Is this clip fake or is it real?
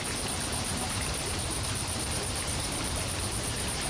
fake